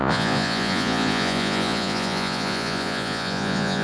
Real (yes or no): no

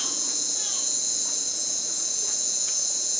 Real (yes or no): no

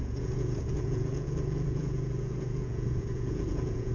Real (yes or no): no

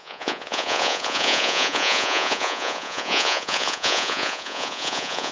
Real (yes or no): no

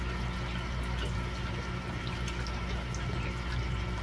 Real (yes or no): yes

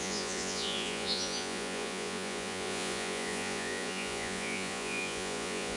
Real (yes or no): no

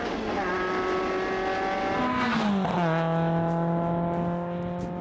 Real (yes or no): yes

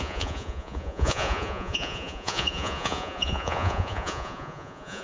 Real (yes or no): no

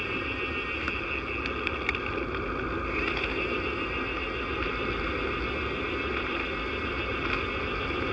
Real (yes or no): yes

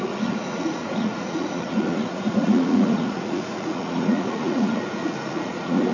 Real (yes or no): no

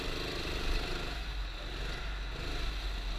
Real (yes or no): yes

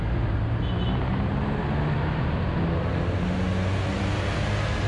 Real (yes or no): yes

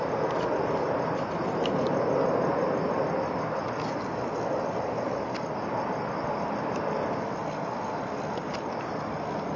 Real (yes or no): yes